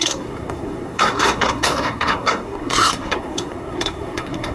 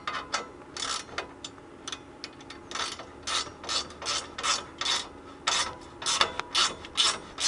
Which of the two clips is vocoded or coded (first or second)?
first